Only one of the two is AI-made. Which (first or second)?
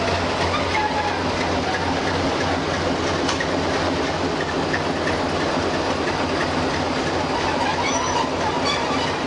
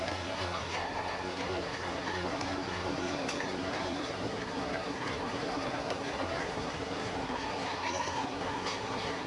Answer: second